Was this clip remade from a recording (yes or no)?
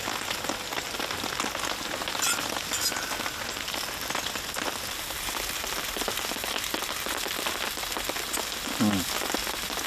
no